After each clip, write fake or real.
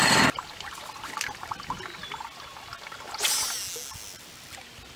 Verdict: real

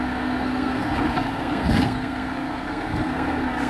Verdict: fake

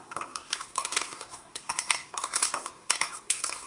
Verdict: fake